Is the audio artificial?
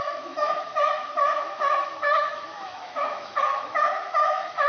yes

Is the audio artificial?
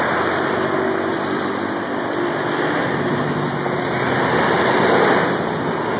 no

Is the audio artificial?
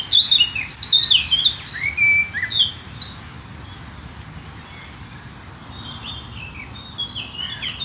no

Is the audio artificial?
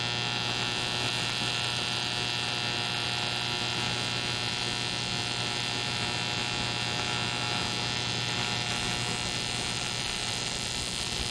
no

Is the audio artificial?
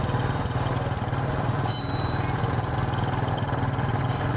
no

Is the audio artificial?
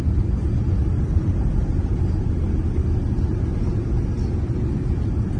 no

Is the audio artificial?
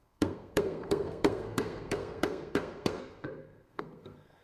yes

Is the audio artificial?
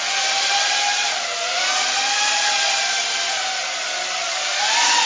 no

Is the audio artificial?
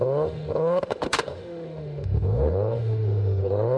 yes